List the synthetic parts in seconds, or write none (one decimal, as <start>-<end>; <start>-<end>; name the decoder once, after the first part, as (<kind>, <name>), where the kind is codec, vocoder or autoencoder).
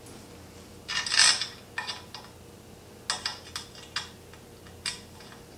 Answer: none